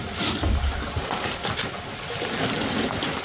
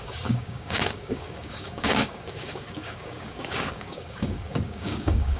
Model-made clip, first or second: second